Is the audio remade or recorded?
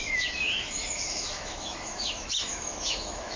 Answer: remade